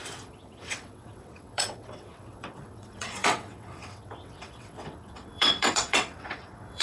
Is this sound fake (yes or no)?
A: yes